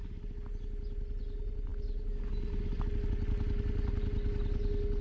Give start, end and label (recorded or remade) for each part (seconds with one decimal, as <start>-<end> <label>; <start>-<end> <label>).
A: 0.0-5.0 recorded